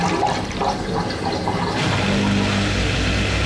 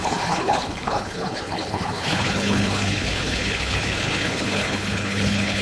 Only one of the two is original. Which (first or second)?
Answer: first